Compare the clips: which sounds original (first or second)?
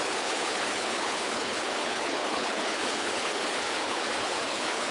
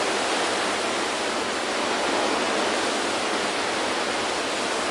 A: second